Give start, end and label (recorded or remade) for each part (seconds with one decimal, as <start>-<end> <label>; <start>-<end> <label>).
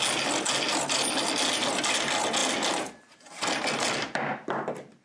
0.0-5.0 recorded